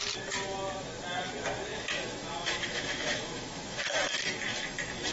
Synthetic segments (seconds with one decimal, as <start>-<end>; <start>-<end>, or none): 1.7-5.1